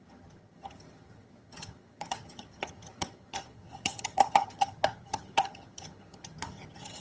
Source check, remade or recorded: remade